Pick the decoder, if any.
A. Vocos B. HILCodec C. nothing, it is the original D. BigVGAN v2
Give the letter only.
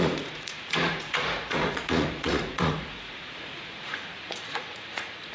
A